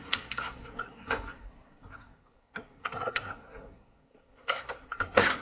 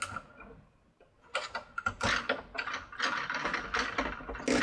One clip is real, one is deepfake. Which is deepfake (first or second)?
first